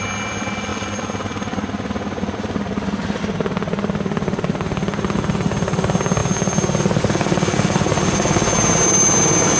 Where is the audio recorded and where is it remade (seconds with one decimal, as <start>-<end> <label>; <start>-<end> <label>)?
0.0-9.6 recorded